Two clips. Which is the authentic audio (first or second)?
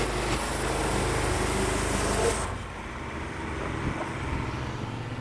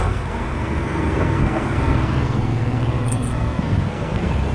first